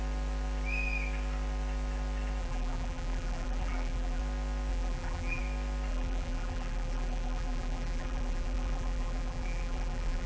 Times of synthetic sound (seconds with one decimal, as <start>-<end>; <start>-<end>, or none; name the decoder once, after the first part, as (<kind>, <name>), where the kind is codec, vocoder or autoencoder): 2.4-4.2 (vocoder, BigVGAN v2); 4.7-5.4; 5.9-10.3